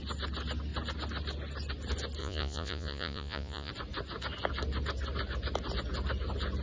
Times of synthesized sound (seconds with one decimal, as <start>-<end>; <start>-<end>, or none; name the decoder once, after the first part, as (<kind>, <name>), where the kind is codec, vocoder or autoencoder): 2.2-3.7 (vocoder, Vocos)

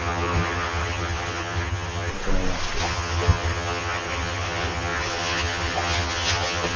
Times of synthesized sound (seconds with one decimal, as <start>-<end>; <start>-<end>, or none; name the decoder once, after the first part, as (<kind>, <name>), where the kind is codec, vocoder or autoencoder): 0.0-2.1 (vocoder, HiFi-GAN); 2.8-6.8

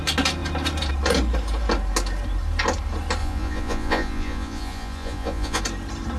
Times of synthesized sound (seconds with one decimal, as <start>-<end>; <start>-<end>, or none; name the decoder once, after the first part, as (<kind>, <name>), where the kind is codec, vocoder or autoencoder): 3.2-5.6 (vocoder, Vocos)

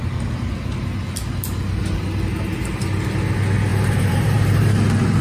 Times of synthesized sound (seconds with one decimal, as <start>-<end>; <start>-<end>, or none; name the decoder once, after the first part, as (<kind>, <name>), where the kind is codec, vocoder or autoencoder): 3.7-4.7 (vocoder, BigVGAN v2)